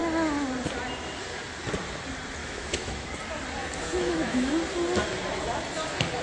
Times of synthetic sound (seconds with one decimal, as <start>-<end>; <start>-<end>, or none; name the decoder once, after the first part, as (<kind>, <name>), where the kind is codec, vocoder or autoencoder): 2.4-3.1 (autoencoder, DAC-VAE); 3.6-4.5